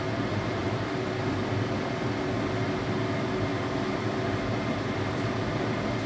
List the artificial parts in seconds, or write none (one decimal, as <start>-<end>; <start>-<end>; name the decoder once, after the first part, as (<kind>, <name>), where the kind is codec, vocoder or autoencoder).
0.6-1.5 (vocoder, BigVGAN v2)